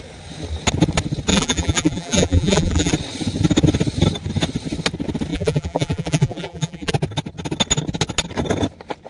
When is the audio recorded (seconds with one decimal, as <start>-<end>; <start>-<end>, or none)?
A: 0.0-1.3; 2.9-5.3; 6.9-9.1